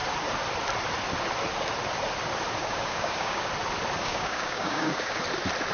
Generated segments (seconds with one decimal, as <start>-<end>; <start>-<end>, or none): 2.6-3.5; 4.0-5.2